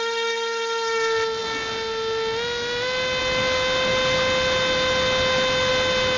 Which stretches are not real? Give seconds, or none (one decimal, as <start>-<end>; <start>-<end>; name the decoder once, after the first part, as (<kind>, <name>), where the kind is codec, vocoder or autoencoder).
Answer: none

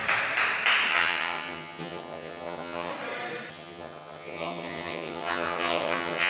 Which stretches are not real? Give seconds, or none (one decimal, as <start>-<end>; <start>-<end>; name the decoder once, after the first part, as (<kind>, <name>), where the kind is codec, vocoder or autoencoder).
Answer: 0.9-2.9 (vocoder, HiFi-GAN); 3.5-6.3

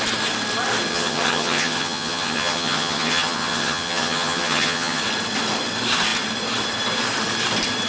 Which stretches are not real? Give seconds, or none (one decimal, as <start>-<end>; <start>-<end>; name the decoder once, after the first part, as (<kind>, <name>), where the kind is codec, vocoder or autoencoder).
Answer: 0.9-5.0 (vocoder, HiFi-GAN)

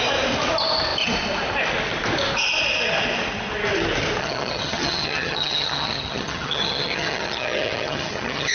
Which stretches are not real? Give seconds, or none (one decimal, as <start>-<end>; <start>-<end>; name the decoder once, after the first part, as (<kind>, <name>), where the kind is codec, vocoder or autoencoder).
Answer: 4.2-8.5 (vocoder, HiFi-GAN)

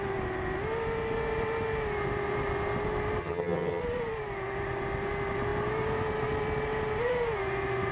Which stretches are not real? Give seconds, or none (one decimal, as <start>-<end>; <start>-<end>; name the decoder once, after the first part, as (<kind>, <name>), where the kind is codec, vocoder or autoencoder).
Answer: 3.2-3.8 (vocoder, HiFi-GAN)

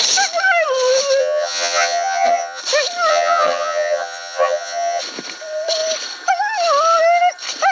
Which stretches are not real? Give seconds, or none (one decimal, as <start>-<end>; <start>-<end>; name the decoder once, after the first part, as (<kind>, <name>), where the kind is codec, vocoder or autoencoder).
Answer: 1.2-2.6 (vocoder, HiFi-GAN); 3.1-5.0